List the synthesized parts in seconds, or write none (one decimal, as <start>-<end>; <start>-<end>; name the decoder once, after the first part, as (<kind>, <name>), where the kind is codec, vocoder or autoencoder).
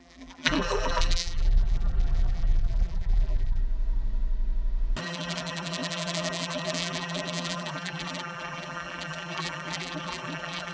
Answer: 0.0-3.6 (vocoder, BigVGAN v2); 5.0-10.7